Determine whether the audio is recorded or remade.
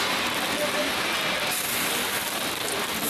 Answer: recorded